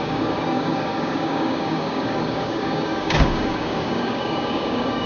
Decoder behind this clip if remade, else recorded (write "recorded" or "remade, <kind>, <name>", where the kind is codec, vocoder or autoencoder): remade, codec, DAC